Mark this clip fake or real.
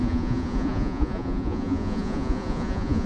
fake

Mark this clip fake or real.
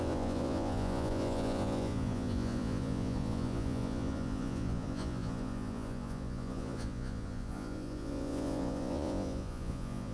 fake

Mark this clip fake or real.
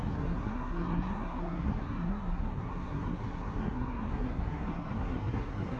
fake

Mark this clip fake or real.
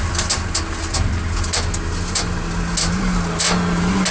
real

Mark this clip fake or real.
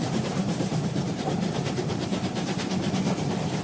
fake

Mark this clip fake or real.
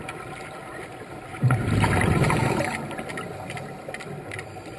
fake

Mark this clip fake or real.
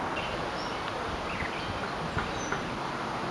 real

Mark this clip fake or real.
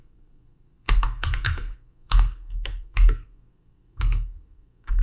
fake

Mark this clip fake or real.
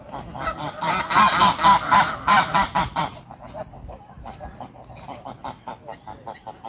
real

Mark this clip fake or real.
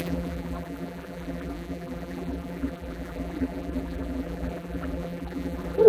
fake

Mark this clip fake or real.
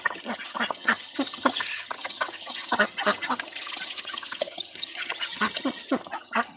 fake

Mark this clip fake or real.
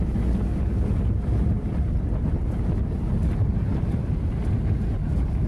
real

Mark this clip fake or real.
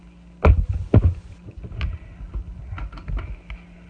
real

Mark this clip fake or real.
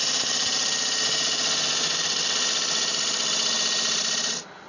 real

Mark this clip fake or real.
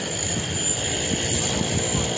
fake